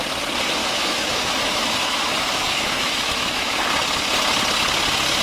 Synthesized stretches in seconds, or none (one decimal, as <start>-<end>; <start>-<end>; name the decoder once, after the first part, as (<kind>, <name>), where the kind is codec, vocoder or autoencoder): 0.6-3.7 (autoencoder, DAC-VAE)